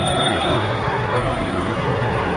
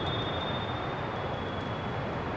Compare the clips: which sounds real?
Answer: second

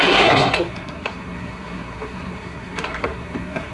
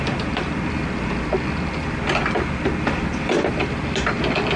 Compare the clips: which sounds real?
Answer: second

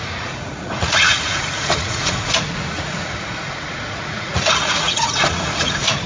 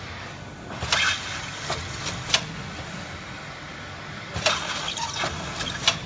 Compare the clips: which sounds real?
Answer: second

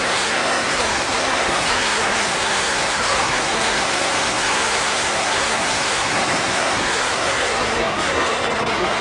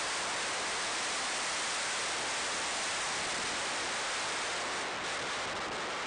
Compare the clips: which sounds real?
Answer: second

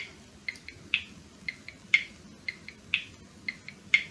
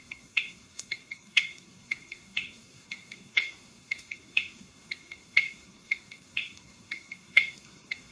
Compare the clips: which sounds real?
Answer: first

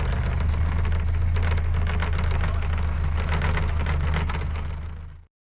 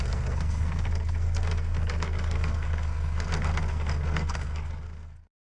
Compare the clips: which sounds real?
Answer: first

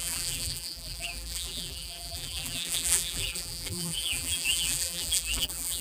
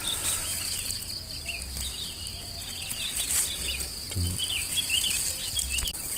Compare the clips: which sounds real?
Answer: second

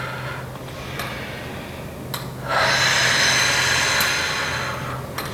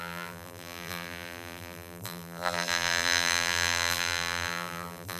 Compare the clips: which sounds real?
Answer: first